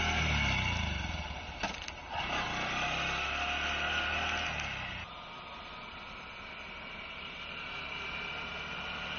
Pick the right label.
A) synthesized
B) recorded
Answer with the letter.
B